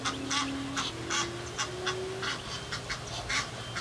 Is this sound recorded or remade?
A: recorded